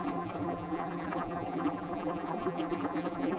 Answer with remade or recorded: remade